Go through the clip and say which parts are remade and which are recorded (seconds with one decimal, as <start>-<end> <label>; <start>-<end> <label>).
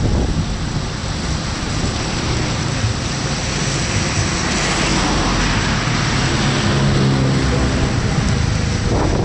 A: 0.0-1.0 recorded; 1.0-3.0 remade; 3.0-4.9 recorded; 4.9-6.4 remade; 6.4-9.2 recorded